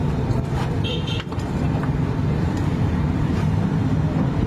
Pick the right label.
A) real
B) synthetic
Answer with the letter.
A